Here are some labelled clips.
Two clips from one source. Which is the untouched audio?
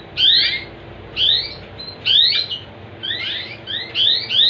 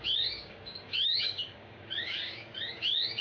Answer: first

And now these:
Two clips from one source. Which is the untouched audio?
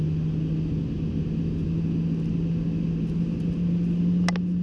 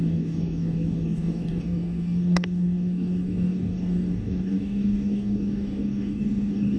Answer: first